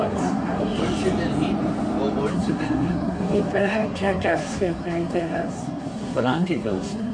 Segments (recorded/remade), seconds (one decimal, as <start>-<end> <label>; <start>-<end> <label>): 0.0-0.8 remade; 0.8-2.3 recorded; 2.3-7.1 remade